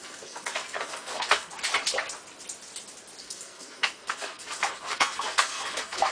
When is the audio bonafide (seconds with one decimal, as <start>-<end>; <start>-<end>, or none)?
1.5-3.2